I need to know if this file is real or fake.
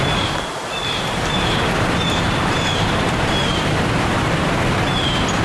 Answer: fake